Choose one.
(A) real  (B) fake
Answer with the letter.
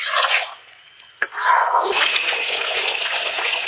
B